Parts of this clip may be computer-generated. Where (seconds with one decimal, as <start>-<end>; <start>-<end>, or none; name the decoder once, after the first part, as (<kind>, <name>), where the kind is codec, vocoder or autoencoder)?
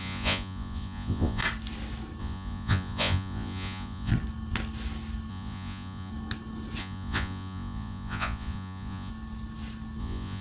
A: 0.0-1.4 (vocoder, Vocos); 2.2-4.1; 5.3-6.1; 6.8-9.1; 10.0-10.4